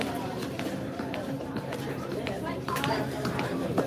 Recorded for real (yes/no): no